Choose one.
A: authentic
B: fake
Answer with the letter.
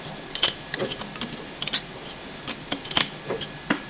A